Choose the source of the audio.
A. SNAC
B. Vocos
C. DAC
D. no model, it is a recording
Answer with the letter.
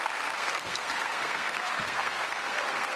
A